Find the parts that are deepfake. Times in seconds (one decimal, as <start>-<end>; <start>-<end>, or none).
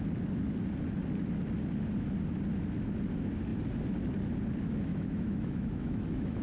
4.9-6.4